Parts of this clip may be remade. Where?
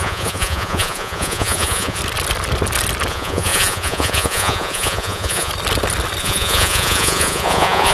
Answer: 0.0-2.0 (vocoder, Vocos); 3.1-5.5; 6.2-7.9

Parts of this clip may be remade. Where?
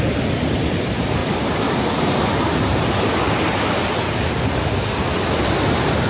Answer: none